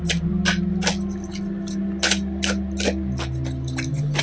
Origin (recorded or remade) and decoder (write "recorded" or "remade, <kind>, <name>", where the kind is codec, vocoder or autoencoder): recorded